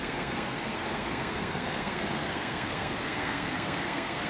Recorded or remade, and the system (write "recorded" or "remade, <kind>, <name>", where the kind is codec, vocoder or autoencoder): remade, codec, SNAC